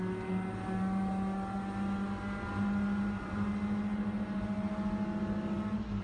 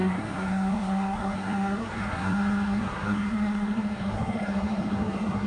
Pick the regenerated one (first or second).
second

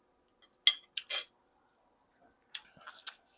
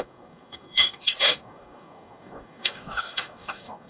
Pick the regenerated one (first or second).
second